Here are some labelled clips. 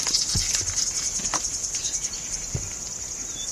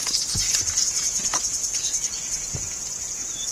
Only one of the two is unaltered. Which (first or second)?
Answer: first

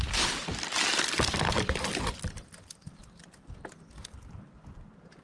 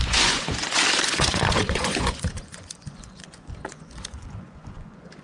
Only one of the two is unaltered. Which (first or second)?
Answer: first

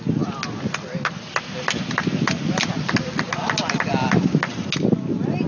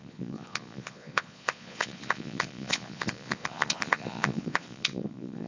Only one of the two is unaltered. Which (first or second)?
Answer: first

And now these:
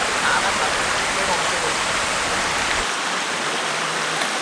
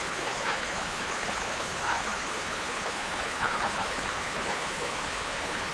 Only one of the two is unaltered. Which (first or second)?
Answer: first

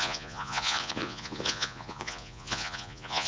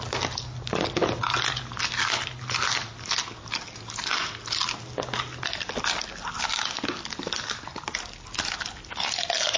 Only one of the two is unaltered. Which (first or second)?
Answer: second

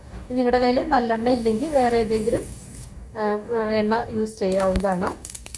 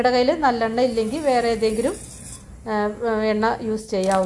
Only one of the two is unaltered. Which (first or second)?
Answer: second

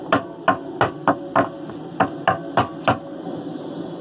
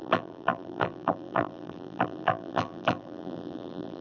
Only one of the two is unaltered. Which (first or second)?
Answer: first